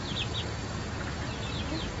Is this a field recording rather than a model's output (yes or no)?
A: yes